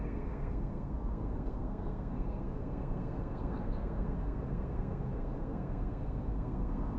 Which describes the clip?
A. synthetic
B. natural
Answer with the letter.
A